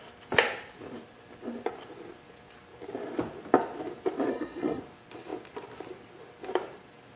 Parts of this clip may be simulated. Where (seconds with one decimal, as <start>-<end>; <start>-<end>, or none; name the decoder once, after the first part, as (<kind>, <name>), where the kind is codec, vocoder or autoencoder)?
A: 4.3-4.8 (codec, SNAC)